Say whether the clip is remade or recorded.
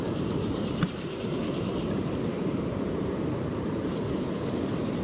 remade